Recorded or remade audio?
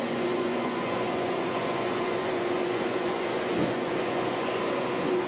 remade